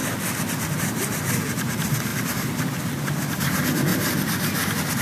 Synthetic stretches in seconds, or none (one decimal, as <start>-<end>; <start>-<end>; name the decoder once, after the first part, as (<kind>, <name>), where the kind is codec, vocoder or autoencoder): none

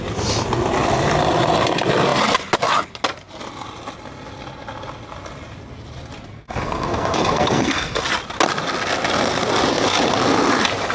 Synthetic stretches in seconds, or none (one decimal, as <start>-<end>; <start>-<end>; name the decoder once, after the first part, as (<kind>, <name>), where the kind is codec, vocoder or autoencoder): 6.3-8.0 (codec, SNAC)

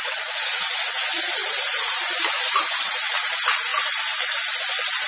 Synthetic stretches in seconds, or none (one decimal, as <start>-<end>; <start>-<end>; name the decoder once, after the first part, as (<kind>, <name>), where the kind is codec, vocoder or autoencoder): 1.4-2.9 (vocoder, BigVGAN v2); 3.7-4.3

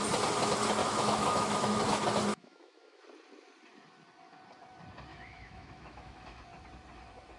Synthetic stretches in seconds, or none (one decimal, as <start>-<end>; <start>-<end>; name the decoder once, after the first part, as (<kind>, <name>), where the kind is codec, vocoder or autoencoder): 0.8-1.8 (autoencoder, DAC-VAE); 2.3-3.0; 5.1-6.4

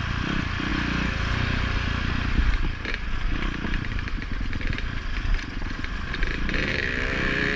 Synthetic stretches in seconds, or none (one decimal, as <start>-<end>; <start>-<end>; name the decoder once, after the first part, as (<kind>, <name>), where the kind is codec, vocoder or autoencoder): 6.7-7.6 (autoencoder, DAC-VAE)

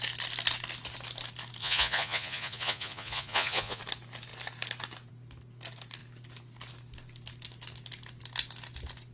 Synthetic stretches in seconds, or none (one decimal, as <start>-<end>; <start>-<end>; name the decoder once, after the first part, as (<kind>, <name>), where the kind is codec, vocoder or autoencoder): 1.6-3.8 (vocoder, Vocos)

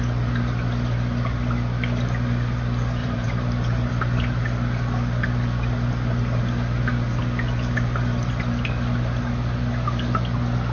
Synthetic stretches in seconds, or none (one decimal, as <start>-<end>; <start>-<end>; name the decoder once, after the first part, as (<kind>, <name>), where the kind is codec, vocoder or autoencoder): 3.0-3.9 (vocoder, BigVGAN v2)